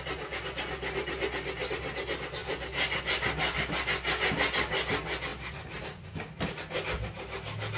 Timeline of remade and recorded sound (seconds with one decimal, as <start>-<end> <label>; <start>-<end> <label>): 0.0-2.4 recorded; 2.4-3.0 remade; 3.0-5.3 recorded; 5.3-6.6 remade; 6.6-7.8 recorded